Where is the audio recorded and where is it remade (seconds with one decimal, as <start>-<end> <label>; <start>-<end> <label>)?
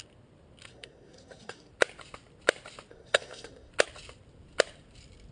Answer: 0.0-0.7 recorded; 0.7-1.7 remade; 1.7-2.9 recorded; 2.9-3.7 remade; 3.7-5.3 recorded